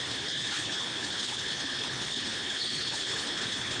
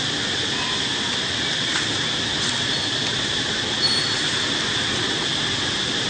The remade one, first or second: first